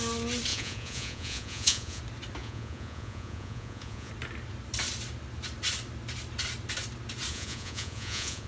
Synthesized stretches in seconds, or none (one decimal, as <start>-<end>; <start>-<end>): 0.5-2.0; 2.4-4.1; 7.3-8.5